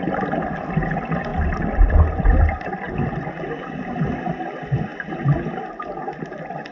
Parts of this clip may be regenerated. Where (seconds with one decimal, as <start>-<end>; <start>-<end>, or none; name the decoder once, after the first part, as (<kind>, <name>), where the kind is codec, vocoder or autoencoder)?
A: none